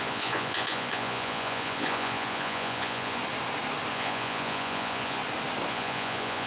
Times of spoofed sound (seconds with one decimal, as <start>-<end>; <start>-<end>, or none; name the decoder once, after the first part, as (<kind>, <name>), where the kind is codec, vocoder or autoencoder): 0.0-3.2 (vocoder, Vocos); 3.9-5.2; 5.7-6.5